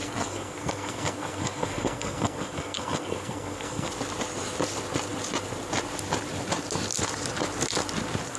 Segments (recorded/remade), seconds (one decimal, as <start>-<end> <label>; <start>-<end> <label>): 0.0-3.9 remade; 3.9-8.4 recorded